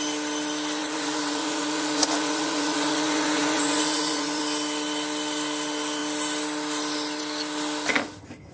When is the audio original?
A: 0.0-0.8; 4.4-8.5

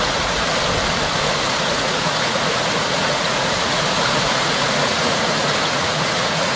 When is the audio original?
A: 0.5-1.5

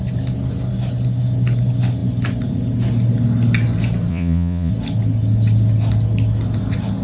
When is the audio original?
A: 0.0-4.1; 4.7-7.0

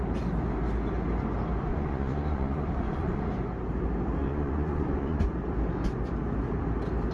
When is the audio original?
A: 0.0-1.7; 3.2-4.2; 5.2-7.1